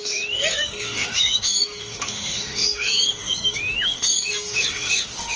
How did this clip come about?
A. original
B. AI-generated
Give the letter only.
B